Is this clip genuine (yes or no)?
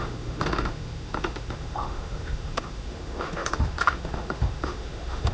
no